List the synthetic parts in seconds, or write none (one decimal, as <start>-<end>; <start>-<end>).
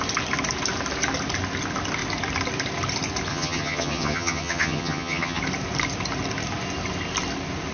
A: 3.3-5.4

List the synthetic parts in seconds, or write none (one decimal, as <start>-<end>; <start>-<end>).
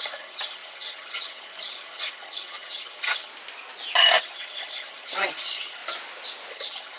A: 0.0-3.3; 4.2-5.8; 6.5-7.0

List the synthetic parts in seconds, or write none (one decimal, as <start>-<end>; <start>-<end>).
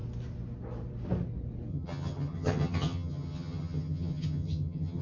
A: 1.7-5.0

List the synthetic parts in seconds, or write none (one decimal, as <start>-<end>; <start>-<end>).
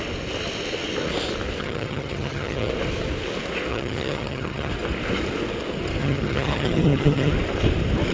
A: 1.6-2.7; 3.7-4.7; 6.0-7.3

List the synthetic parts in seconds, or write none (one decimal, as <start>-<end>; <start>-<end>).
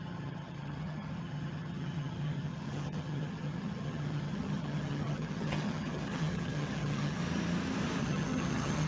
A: 0.0-7.2; 8.0-8.9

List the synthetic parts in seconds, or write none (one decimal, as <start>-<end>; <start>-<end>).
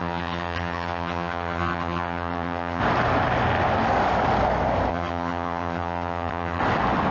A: 0.0-2.8; 4.9-6.6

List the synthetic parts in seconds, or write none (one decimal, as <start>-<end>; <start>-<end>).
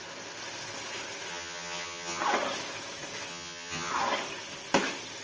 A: 1.3-2.2; 3.3-3.9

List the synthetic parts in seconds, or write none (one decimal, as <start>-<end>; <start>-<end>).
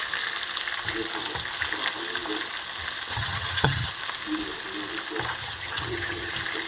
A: 3.1-3.9; 5.4-6.3